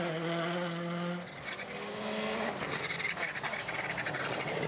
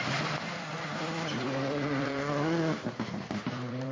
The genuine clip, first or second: first